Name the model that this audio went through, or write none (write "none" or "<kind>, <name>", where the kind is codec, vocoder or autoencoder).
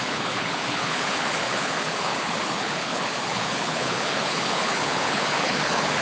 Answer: codec, HILCodec